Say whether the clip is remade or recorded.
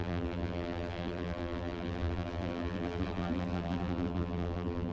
remade